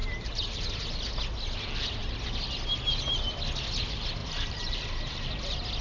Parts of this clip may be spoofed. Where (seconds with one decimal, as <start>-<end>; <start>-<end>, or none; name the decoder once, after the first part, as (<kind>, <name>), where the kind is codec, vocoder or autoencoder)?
0.0-0.6 (vocoder, BigVGAN v2); 4.2-5.3